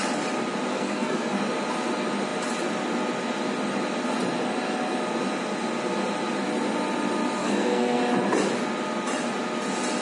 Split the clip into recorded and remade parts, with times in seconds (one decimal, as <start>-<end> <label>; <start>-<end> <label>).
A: 0.0-0.7 recorded; 0.7-1.4 remade; 1.4-7.4 recorded; 7.4-8.0 remade; 8.0-10.0 recorded